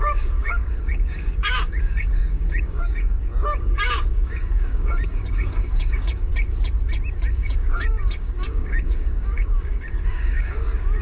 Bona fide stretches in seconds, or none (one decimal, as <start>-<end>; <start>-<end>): 6.3-7.3